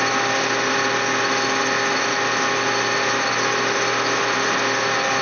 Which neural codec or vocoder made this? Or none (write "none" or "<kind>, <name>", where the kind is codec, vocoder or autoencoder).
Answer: none